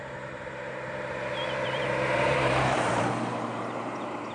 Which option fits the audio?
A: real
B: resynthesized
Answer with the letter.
B